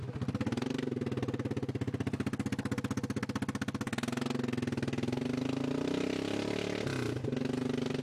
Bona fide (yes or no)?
yes